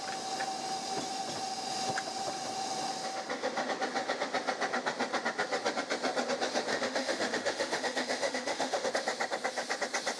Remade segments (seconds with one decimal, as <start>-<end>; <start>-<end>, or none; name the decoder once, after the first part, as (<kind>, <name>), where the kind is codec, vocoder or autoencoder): 6.7-8.9 (autoencoder, DAC-VAE)